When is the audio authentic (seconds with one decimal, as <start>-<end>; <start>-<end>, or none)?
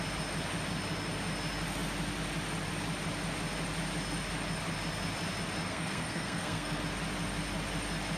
0.0-5.7; 6.8-8.2